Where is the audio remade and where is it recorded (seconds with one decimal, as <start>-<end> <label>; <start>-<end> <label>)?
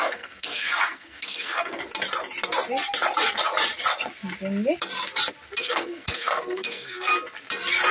0.0-1.8 remade; 1.8-5.6 recorded; 5.6-7.1 remade; 7.1-7.9 recorded